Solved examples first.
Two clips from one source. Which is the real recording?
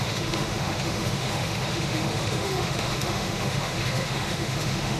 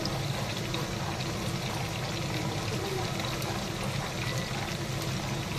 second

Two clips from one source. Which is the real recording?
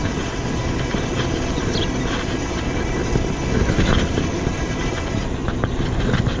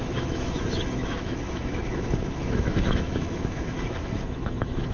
first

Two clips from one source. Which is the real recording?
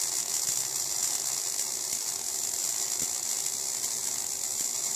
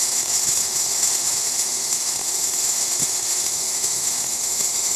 first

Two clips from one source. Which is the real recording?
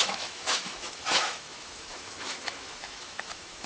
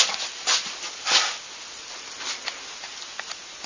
second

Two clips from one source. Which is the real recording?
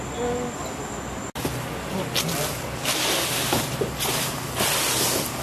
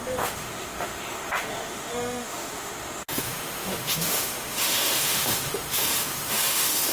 first